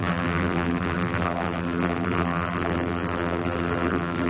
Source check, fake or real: fake